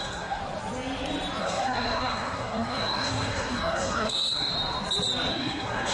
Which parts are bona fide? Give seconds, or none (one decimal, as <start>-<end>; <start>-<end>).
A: 0.4-1.4; 4.5-5.3